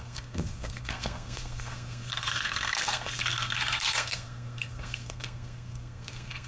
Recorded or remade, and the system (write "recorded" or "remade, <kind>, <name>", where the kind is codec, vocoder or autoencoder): remade, codec, SNAC